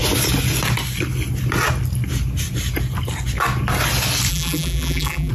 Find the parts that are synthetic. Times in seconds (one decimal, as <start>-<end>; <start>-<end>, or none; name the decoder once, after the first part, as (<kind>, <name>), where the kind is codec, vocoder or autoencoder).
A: 4.3-5.3 (vocoder, BigVGAN v2)